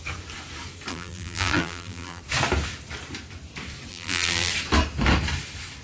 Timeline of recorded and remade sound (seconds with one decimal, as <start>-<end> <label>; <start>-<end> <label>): 0.0-0.9 recorded; 0.9-2.2 remade; 2.2-3.9 recorded; 3.9-4.5 remade; 4.5-5.8 recorded